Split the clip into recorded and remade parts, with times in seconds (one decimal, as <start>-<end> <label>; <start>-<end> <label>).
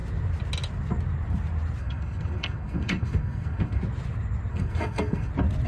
0.0-1.8 recorded; 1.8-3.8 remade; 3.8-4.5 recorded; 4.5-5.3 remade; 5.3-5.7 recorded